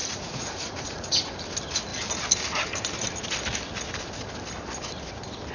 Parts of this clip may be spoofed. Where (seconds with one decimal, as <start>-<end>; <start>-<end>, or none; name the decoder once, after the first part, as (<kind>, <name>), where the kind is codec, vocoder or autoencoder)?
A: 0.0-1.2 (vocoder, Vocos)